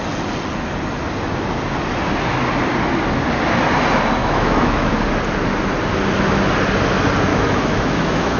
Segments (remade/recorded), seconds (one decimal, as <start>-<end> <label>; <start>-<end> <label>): 0.0-4.2 recorded; 4.2-4.9 remade; 4.9-7.3 recorded; 7.3-8.4 remade